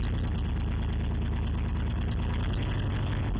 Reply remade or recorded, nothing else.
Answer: recorded